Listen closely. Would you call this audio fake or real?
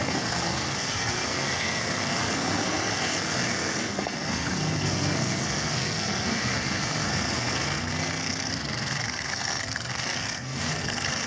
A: fake